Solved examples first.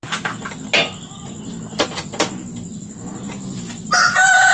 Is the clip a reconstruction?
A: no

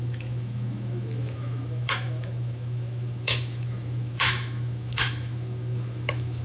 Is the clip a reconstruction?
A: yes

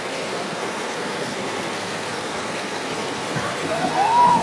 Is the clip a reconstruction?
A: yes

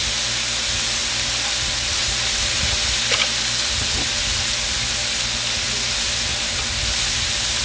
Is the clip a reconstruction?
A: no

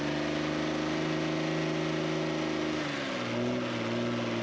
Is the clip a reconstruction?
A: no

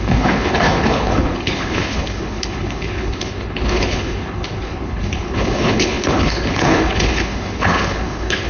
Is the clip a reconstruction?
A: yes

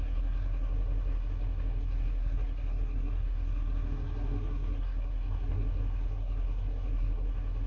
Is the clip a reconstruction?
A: yes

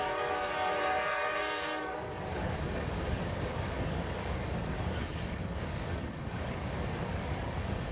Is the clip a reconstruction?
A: yes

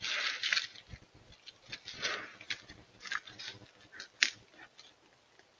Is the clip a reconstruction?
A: no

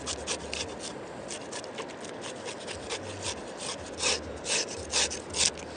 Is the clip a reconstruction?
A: no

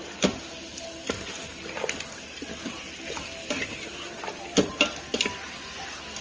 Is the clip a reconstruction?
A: no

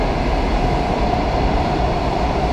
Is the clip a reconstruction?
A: yes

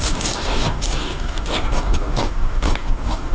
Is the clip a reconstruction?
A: yes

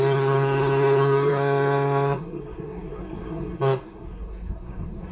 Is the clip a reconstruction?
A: yes